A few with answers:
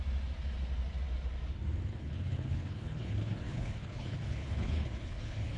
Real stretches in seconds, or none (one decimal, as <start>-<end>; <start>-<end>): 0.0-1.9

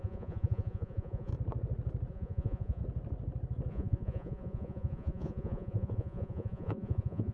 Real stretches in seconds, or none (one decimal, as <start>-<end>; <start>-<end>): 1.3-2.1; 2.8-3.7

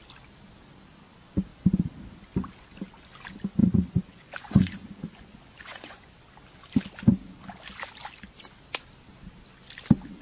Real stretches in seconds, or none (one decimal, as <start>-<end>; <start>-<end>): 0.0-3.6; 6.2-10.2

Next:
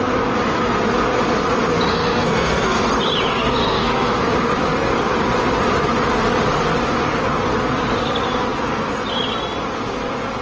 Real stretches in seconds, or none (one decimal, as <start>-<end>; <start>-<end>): 0.0-1.9; 2.9-3.3; 4.2-10.4